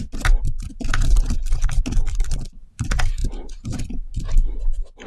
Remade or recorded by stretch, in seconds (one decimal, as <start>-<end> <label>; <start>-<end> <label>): 0.0-5.1 recorded